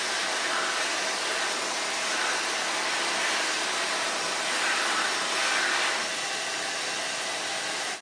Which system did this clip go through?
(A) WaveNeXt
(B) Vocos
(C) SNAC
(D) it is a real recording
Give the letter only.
D